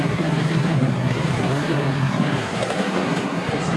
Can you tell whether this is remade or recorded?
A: remade